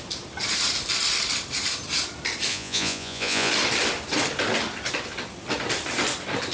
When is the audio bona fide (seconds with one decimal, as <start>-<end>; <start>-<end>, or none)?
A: 0.0-2.5; 3.5-6.5